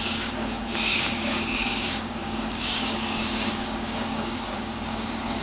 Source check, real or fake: fake